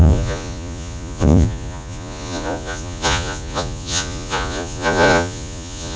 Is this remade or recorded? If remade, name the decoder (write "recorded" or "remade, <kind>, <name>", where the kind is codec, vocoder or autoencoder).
remade, vocoder, Vocos